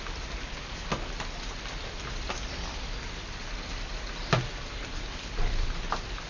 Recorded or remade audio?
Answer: recorded